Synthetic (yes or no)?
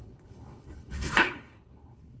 yes